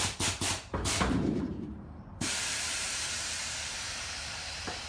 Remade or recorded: remade